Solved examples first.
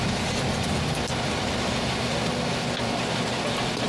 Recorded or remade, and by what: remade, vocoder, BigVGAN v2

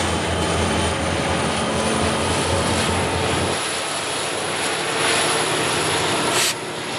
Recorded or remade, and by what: recorded